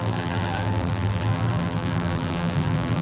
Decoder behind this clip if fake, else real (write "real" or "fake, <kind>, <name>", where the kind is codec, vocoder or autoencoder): fake, vocoder, BigVGAN v2